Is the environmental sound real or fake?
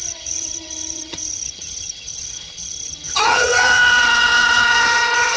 fake